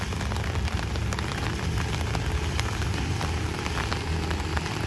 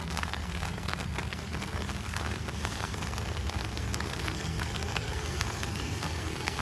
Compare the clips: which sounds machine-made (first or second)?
second